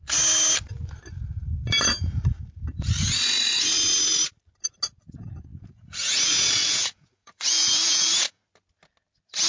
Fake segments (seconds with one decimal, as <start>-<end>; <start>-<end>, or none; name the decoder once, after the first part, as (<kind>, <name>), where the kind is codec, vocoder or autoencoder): 5.5-8.4 (vocoder, Vocos)